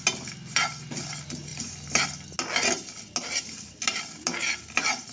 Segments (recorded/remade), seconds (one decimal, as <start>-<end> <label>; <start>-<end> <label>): 0.0-5.1 recorded